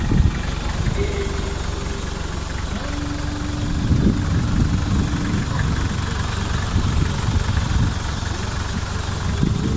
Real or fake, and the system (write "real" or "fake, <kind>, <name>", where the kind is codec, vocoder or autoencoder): real